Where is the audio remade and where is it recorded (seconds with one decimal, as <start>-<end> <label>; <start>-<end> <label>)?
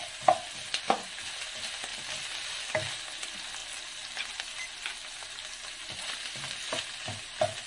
0.0-7.7 recorded